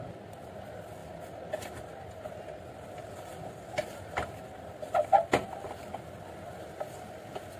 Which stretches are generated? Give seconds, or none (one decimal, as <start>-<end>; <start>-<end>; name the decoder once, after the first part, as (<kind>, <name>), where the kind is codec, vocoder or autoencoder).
none